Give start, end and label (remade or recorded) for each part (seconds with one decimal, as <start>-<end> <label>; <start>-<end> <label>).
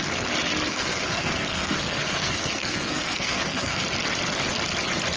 0.0-0.7 recorded; 0.7-3.8 remade; 3.8-5.2 recorded